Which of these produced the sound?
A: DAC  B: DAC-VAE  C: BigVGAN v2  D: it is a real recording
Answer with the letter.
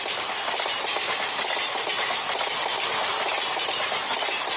D